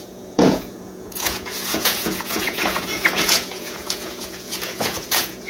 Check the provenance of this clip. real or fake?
fake